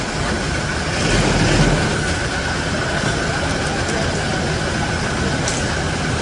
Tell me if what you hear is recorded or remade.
recorded